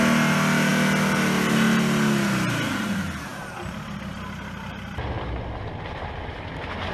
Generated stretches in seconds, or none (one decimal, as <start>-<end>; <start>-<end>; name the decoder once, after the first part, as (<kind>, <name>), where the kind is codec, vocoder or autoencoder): none